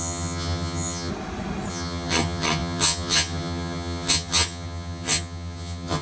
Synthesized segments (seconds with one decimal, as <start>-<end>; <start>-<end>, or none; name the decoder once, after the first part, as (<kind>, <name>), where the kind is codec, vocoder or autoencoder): 0.0-1.1 (vocoder, HiFi-GAN); 1.7-6.0